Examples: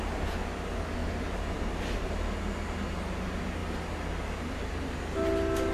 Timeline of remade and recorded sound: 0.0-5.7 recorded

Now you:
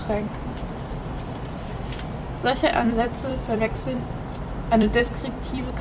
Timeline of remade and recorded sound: 0.0-2.2 remade; 2.2-2.7 recorded; 2.7-5.8 remade

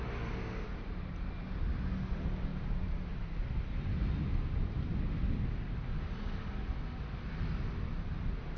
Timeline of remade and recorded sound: 0.0-2.5 recorded; 2.5-3.0 remade; 3.0-8.6 recorded

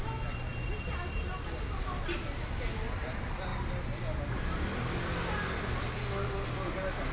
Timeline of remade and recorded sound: 0.0-7.1 recorded

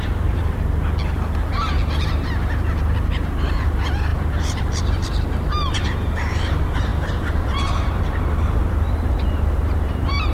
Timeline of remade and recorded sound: 0.0-0.4 remade; 0.4-3.1 recorded; 3.1-10.3 remade

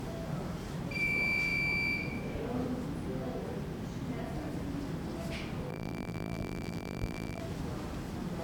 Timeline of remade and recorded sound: 0.0-5.7 recorded; 5.7-7.4 remade; 7.4-8.4 recorded